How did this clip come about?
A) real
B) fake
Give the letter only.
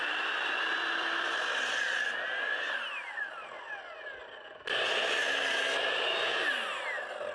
A